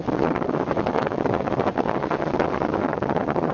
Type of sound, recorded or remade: remade